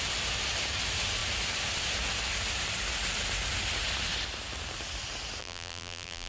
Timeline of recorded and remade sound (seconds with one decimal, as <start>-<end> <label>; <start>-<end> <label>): 0.0-5.4 recorded; 5.4-6.3 remade